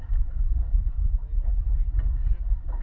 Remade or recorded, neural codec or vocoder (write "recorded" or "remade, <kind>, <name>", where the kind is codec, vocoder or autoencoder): recorded